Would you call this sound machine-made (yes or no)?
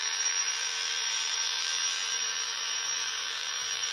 yes